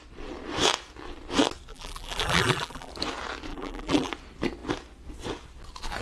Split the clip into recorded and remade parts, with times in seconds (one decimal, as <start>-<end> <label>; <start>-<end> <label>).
0.0-1.7 recorded; 1.7-2.9 remade; 2.9-3.5 recorded; 3.5-4.1 remade; 4.1-6.0 recorded